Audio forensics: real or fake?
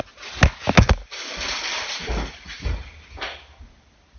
real